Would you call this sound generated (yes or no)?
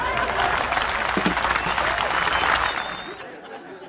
no